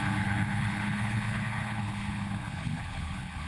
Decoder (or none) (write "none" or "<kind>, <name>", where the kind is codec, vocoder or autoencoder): codec, HILCodec